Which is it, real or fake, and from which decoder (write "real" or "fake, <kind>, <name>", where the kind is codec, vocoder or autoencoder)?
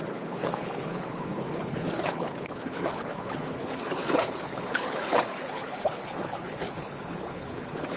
fake, codec, HILCodec